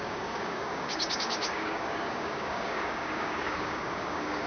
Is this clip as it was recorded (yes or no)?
no